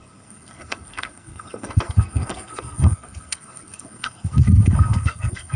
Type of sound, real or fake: fake